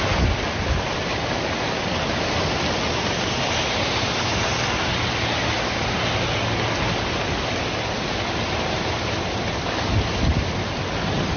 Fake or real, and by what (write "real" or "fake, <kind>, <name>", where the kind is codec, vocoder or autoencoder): real